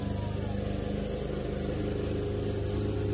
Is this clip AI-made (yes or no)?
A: no